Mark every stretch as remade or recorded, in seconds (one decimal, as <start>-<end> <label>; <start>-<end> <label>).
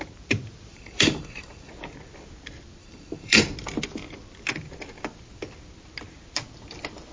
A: 0.0-0.7 recorded; 0.7-1.7 remade; 1.7-2.8 recorded; 2.8-3.4 remade; 3.4-7.1 recorded